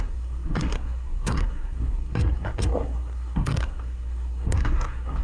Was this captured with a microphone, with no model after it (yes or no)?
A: no